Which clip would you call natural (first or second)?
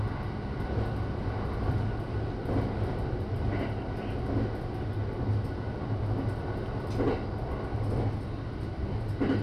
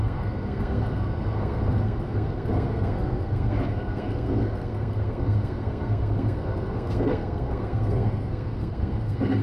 first